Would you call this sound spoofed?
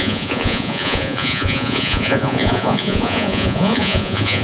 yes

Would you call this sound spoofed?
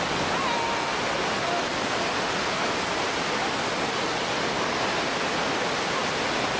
no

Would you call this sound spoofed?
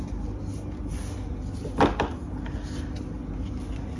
no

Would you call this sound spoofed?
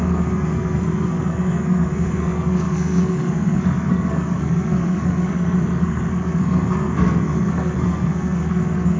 yes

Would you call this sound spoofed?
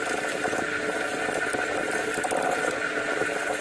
no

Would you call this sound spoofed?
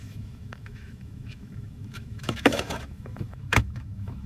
yes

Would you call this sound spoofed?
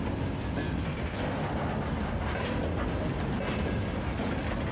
no